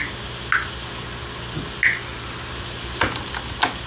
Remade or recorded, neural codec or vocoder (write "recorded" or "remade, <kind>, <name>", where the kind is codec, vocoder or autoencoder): recorded